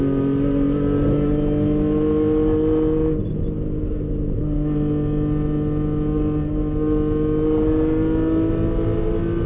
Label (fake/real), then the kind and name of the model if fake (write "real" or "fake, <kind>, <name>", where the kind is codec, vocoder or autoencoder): real